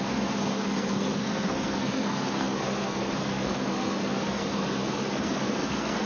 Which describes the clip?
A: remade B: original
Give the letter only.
A